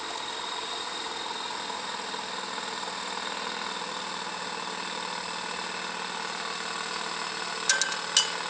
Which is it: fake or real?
real